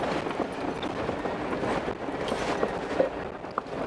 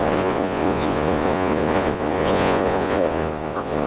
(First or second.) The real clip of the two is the first